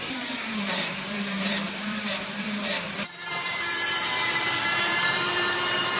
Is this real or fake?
fake